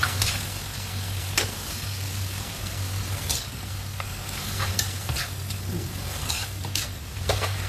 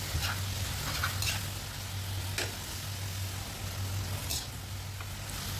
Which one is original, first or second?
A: second